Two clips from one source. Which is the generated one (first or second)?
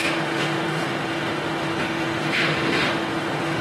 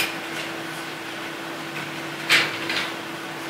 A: first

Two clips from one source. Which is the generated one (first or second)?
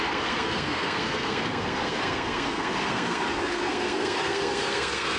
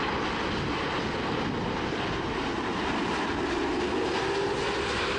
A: first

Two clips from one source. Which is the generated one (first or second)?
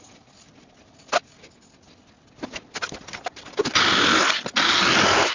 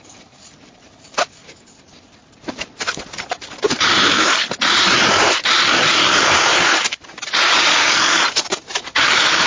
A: second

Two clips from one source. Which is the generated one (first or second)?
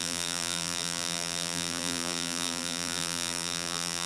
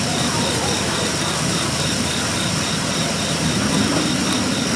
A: first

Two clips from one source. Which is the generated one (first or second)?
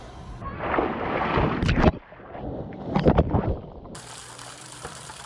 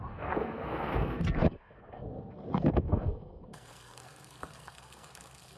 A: second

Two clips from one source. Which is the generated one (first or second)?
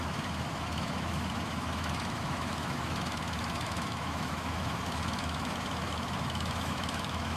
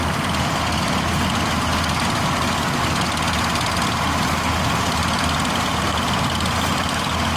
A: first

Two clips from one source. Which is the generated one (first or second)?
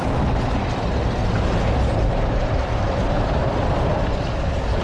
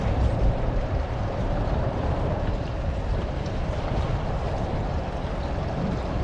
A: second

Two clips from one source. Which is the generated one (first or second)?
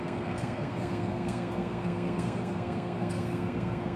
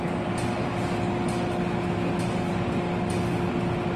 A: first